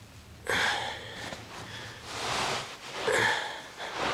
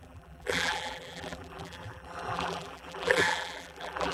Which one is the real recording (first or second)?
first